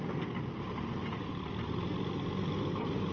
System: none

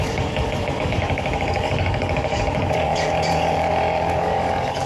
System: codec, DAC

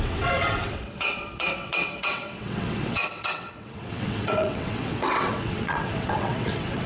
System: vocoder, WaveNeXt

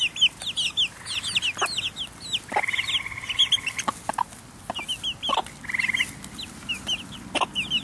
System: none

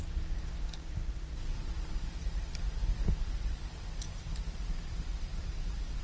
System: vocoder, BigVGAN v2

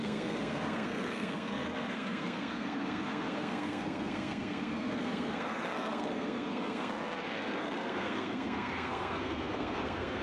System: codec, SNAC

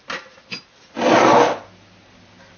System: none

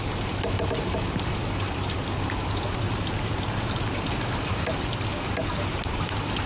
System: none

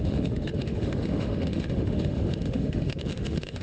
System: autoencoder, DAC-VAE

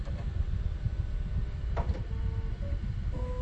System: none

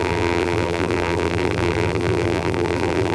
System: vocoder, BigVGAN v2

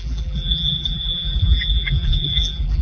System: vocoder, BigVGAN v2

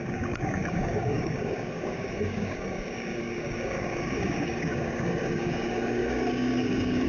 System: codec, DAC